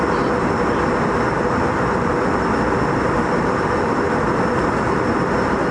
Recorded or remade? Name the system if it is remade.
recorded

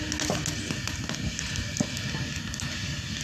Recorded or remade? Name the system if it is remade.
recorded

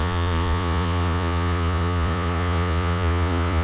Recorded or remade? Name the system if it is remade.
remade, vocoder, Vocos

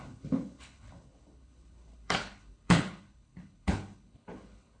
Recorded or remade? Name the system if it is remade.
remade, codec, HILCodec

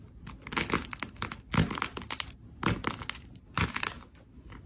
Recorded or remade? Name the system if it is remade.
recorded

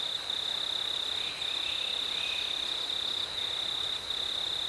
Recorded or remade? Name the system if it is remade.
recorded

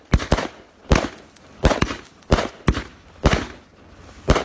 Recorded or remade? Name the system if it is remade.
recorded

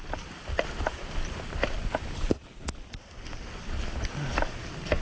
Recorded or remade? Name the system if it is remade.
recorded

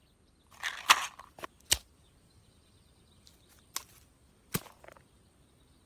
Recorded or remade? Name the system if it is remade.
recorded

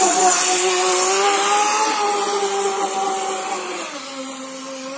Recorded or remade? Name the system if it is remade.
recorded